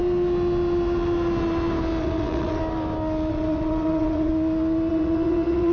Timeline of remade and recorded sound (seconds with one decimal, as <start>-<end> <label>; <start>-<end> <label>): 0.0-2.0 recorded; 2.0-2.6 remade; 2.6-3.3 recorded; 3.3-4.3 remade; 4.3-4.9 recorded; 4.9-5.7 remade